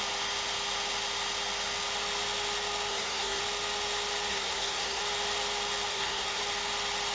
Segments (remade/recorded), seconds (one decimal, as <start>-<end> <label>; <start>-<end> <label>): 0.0-2.9 recorded; 2.9-3.4 remade; 3.4-4.3 recorded; 4.3-5.0 remade; 5.0-5.9 recorded; 5.9-6.4 remade; 6.4-7.1 recorded